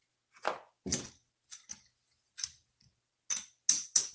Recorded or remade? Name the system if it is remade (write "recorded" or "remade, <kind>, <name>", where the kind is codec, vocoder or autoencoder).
recorded